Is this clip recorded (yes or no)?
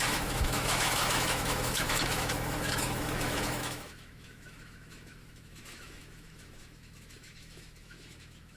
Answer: no